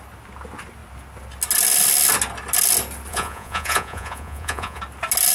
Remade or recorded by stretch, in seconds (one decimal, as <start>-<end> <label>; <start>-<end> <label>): 0.0-3.1 recorded; 3.1-4.8 remade; 4.8-5.3 recorded